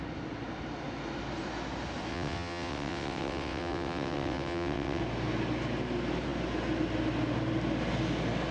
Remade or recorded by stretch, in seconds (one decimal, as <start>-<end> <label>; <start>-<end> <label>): 0.0-2.1 recorded; 2.1-5.0 remade; 5.0-8.5 recorded